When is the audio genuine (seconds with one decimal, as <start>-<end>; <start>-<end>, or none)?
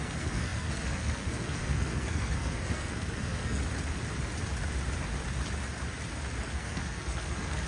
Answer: 3.6-6.4